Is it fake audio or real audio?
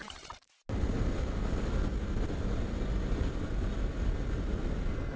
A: real